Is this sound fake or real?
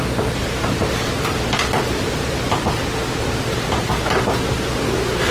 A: real